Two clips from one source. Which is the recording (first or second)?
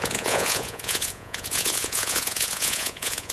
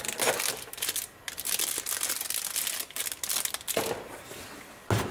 second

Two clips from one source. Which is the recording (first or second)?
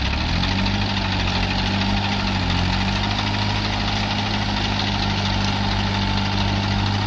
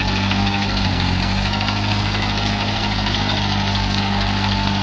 first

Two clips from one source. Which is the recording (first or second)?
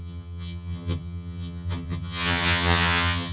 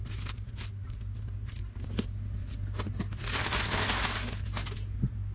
second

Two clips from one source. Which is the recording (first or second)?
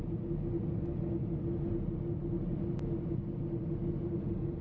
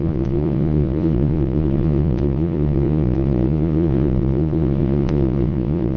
first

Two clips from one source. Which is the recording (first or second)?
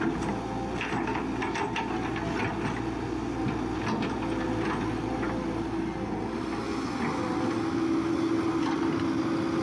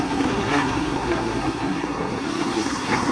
first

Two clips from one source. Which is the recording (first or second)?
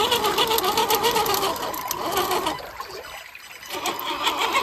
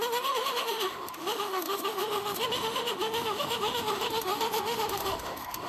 first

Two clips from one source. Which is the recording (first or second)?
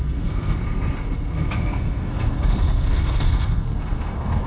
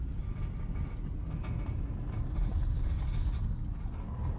second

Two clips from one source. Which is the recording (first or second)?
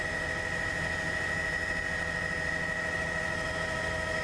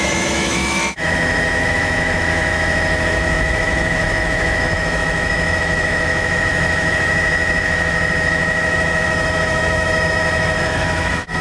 first